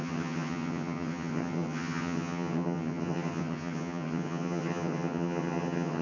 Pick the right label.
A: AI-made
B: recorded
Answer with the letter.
A